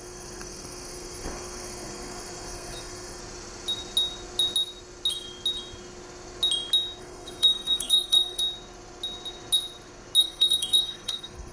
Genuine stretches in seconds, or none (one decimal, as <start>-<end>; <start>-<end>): 3.2-7.0; 8.4-10.2